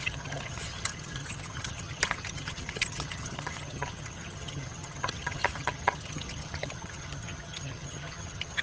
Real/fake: fake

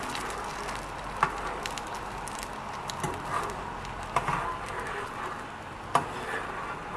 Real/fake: real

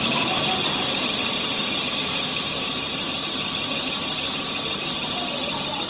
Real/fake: real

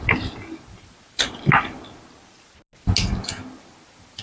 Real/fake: real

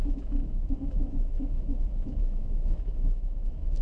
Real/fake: fake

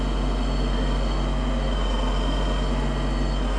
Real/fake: real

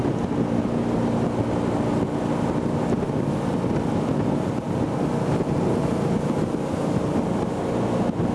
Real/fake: real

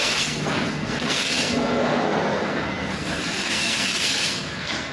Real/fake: fake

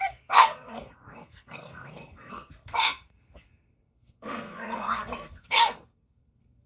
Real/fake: fake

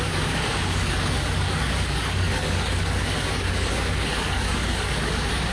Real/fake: fake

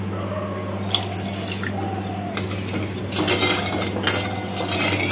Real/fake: real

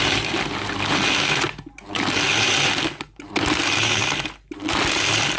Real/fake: real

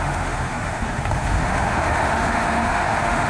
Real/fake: fake